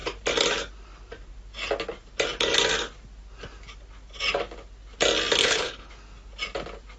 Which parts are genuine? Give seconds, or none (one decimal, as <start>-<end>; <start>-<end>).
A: 0.0-5.4; 5.9-7.0